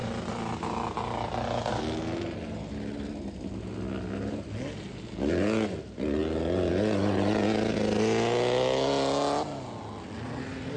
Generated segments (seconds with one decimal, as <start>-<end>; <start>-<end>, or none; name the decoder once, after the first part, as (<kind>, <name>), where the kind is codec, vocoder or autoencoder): none